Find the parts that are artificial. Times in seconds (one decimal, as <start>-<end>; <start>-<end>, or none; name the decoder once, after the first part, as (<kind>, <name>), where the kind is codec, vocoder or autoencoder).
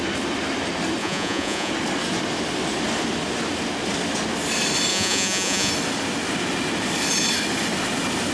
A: 1.0-1.7 (vocoder, Vocos); 4.9-5.7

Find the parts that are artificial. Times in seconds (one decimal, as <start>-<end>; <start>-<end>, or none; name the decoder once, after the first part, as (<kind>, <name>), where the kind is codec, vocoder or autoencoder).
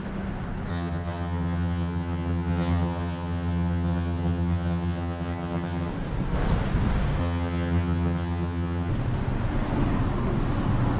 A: 0.7-5.9 (vocoder, HiFi-GAN); 7.2-8.9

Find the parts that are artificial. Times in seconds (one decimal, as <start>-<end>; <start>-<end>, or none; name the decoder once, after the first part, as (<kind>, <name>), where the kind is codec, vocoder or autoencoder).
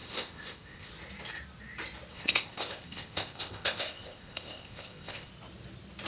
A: 0.0-0.9 (codec, ZipCodec); 2.1-5.3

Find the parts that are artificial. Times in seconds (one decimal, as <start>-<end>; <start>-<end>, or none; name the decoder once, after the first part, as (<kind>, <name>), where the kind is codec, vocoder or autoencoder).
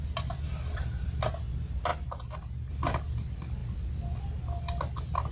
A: none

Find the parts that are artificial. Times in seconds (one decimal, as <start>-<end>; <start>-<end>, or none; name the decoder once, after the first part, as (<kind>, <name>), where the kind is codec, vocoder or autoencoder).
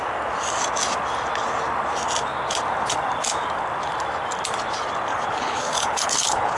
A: 5.1-6.6 (codec, HILCodec)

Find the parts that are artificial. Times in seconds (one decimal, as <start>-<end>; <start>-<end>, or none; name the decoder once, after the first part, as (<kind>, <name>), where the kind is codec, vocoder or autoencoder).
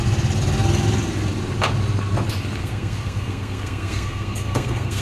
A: 2.6-5.0 (codec, SNAC)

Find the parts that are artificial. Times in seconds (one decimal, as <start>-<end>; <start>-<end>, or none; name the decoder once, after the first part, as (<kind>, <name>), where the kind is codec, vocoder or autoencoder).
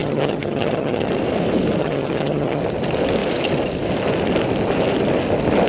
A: 0.0-1.1 (vocoder, HiFi-GAN); 1.8-2.6